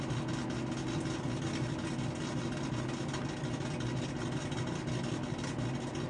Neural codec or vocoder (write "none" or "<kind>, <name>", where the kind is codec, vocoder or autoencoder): none